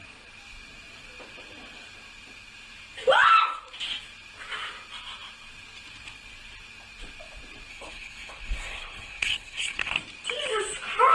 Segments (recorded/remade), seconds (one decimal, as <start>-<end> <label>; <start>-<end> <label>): 0.0-7.7 recorded; 7.7-9.9 remade; 9.9-11.1 recorded